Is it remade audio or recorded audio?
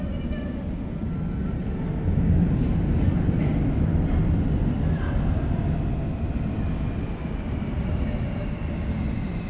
recorded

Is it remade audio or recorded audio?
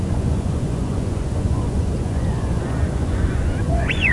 remade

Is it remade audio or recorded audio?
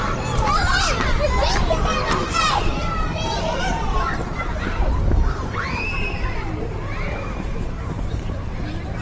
remade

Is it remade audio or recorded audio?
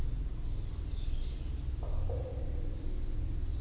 recorded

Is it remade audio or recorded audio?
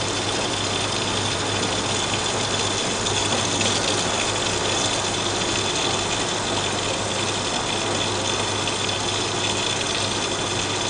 recorded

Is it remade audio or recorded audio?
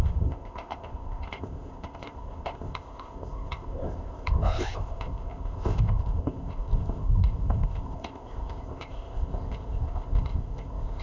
remade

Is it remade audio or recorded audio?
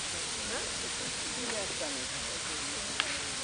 recorded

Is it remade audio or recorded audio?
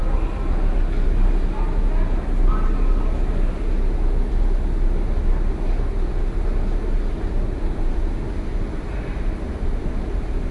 recorded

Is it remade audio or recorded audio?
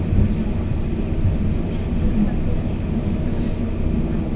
recorded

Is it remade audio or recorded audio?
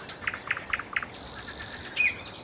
recorded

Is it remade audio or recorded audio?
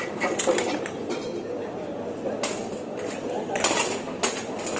recorded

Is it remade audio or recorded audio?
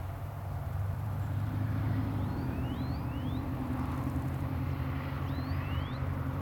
remade